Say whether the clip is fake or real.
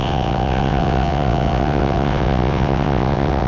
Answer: fake